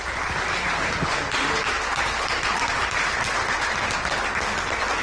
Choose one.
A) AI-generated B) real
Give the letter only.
B